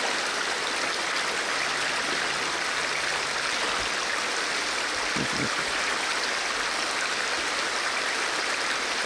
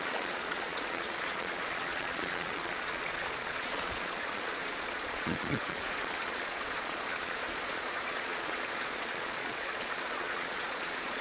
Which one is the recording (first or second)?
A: first